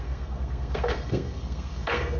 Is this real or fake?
fake